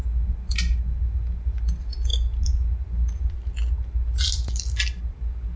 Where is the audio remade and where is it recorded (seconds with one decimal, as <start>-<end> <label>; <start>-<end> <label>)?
0.0-5.6 recorded